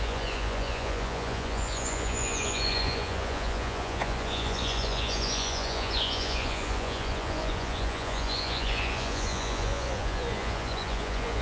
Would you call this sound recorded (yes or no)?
no